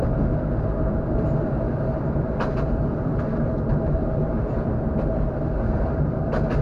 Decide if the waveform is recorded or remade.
remade